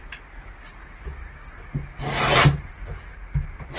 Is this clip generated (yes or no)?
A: no